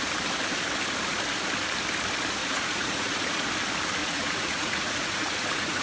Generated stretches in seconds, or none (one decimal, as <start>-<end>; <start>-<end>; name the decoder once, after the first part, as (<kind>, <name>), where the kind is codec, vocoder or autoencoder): 2.4-3.5 (vocoder, Vocos); 4.0-5.8

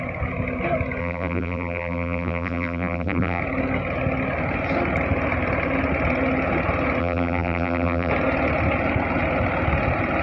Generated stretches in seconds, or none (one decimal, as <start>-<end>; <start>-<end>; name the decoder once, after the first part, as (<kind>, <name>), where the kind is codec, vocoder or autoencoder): 1.0-3.4 (vocoder, BigVGAN v2); 7.0-8.1

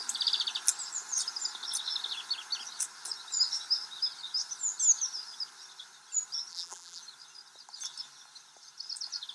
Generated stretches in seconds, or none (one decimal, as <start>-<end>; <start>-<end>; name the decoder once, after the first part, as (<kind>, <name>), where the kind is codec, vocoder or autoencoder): 6.5-7.0 (vocoder, BigVGAN v2)